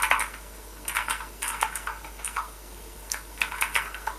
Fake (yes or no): yes